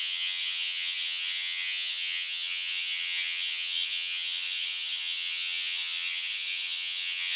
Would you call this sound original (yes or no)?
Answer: no